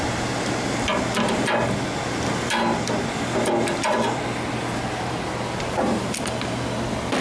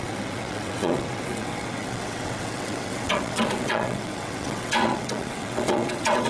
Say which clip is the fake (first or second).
second